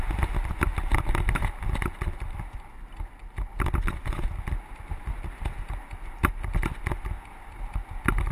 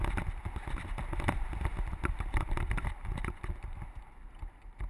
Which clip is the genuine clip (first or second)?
first